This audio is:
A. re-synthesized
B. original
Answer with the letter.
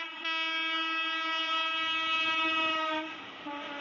B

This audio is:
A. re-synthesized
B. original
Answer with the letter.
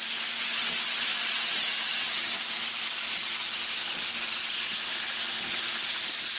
B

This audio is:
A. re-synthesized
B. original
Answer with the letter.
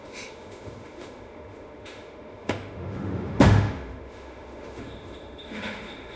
A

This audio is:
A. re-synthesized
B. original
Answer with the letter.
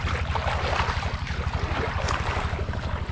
B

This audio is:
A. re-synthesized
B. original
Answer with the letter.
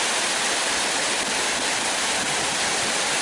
B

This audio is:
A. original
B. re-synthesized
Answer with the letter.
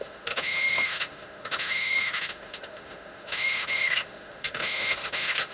B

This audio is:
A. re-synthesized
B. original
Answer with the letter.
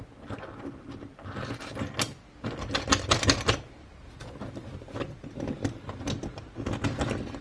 B